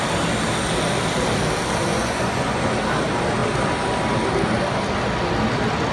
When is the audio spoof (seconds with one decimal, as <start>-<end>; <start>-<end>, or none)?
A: 1.9-2.7